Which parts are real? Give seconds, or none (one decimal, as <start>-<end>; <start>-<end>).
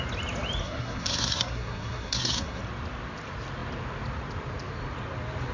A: 0.0-0.6; 2.6-5.5